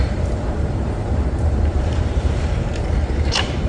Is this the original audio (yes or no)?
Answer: no